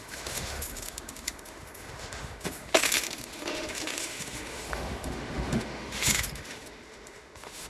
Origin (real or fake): fake